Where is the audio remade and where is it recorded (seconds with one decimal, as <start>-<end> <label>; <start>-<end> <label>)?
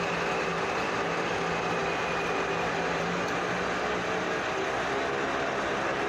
0.0-6.1 recorded